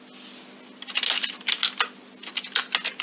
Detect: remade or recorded recorded